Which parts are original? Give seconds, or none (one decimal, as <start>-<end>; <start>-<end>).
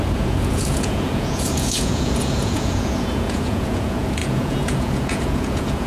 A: none